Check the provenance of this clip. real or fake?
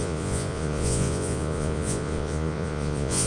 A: fake